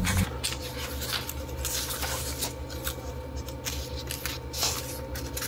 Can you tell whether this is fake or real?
real